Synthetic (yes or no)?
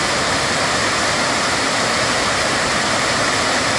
yes